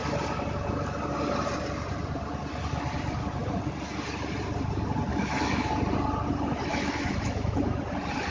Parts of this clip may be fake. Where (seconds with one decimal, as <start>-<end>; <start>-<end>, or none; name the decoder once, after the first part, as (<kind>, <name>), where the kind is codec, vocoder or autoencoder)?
5.1-5.7 (autoencoder, DAC-VAE); 6.7-7.8

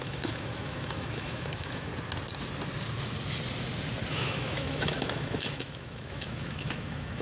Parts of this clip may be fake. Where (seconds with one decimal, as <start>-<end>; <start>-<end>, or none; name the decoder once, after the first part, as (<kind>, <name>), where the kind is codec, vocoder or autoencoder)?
0.0-1.9 (autoencoder, DAC-VAE); 4.1-7.2